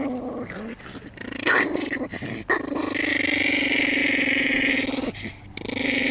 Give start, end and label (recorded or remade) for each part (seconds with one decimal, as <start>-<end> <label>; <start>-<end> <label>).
0.0-6.1 recorded